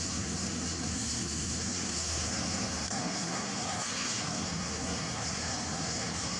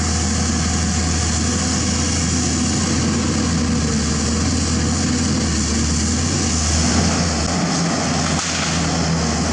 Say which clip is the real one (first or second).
second